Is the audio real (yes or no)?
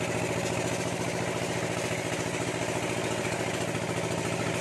yes